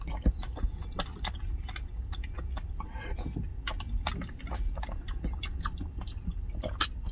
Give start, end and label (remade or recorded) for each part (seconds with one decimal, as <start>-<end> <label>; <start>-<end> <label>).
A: 0.0-7.1 recorded